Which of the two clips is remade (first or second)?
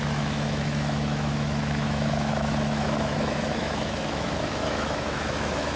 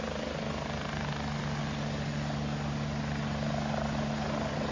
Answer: first